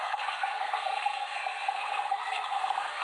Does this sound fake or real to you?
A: fake